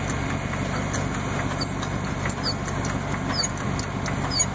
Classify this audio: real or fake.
real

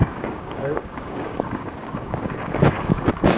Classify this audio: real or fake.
fake